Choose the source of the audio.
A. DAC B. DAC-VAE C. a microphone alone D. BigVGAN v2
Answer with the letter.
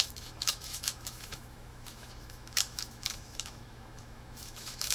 B